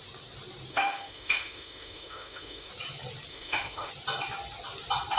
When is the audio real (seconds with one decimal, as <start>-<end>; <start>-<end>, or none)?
0.0-0.7; 2.7-3.3; 3.9-5.2